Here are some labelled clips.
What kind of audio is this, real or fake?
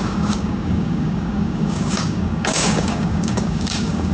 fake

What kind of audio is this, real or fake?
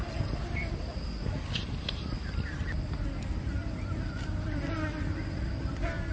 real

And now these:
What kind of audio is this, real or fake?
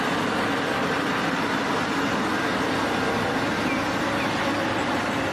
real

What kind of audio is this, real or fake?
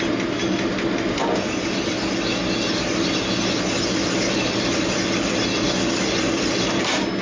real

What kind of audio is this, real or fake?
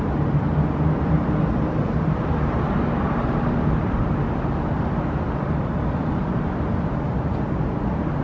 real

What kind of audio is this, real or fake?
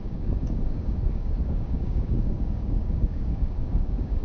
fake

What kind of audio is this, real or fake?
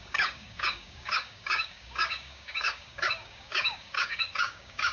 fake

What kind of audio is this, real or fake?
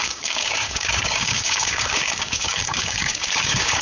fake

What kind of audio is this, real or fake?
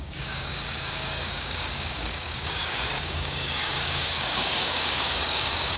fake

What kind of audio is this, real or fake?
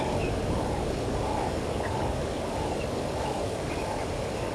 fake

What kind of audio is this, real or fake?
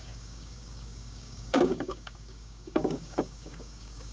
fake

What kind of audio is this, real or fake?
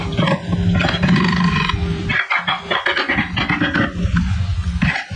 real